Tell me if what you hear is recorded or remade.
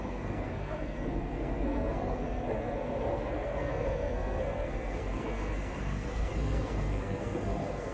remade